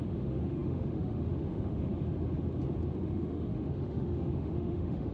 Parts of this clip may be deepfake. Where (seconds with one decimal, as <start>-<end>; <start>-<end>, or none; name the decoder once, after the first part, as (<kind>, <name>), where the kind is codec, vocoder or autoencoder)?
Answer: 0.0-1.9 (autoencoder, DAC-VAE); 3.0-5.1